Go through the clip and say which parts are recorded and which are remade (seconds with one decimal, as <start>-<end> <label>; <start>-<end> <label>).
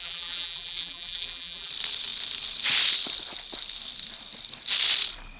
0.0-1.7 remade; 1.7-5.4 recorded